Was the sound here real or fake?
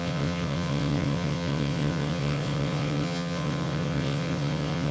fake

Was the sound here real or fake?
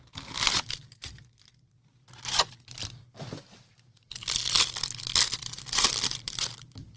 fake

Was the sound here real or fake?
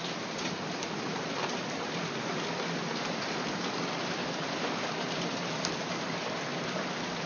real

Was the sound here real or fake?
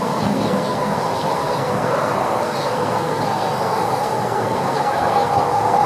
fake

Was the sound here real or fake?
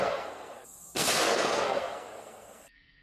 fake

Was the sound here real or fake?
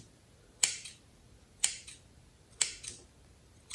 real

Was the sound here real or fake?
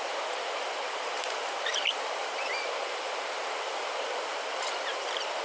fake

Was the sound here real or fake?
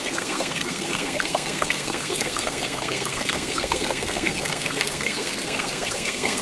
fake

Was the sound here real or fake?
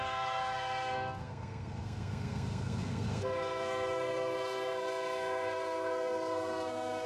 fake